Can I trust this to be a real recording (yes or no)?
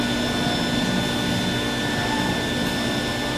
yes